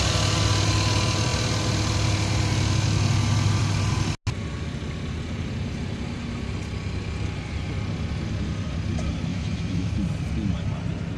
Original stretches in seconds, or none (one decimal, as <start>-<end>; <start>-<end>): 0.0-9.3; 9.9-11.2